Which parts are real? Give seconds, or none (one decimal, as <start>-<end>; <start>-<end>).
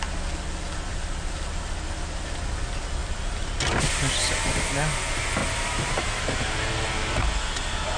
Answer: 0.0-0.9; 1.6-5.4; 6.2-8.0